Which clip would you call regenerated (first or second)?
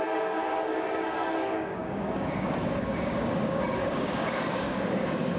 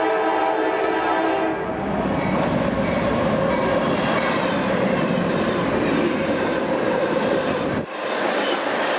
first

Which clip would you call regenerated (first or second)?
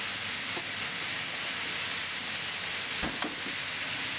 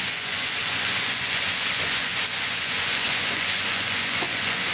second